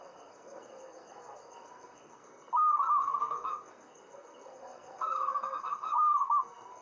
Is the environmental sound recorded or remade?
remade